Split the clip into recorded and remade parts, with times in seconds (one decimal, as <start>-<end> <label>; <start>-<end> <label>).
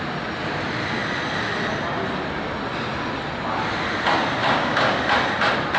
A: 0.0-4.4 recorded; 4.4-5.0 remade; 5.0-5.8 recorded